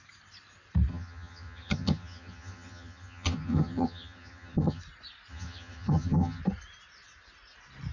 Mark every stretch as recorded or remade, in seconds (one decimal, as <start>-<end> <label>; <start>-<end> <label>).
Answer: 0.0-0.9 recorded; 0.9-4.8 remade; 4.8-5.3 recorded; 5.3-6.4 remade; 6.4-7.9 recorded